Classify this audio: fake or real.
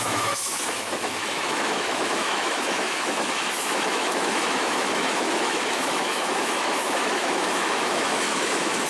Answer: fake